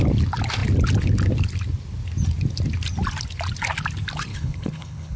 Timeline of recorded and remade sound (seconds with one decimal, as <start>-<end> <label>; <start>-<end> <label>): 0.0-4.3 recorded; 4.3-5.2 remade